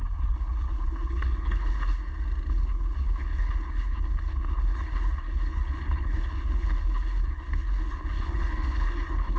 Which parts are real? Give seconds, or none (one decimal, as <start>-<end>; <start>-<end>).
2.0-2.5